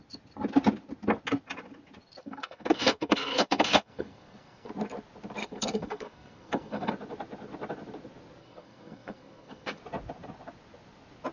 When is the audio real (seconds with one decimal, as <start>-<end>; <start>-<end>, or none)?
0.0-2.2; 4.7-5.4; 6.9-8.4; 9.8-11.3